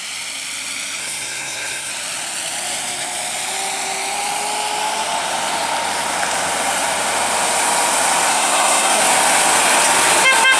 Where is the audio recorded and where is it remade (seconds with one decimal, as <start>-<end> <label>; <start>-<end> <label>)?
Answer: 0.0-1.0 recorded; 1.0-1.9 remade; 1.9-8.3 recorded; 8.3-9.0 remade; 9.0-10.6 recorded